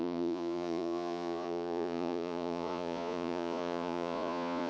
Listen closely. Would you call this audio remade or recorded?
remade